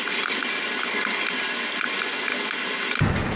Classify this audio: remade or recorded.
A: recorded